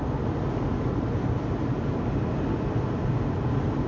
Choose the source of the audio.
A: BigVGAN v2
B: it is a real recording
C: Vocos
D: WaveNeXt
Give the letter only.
B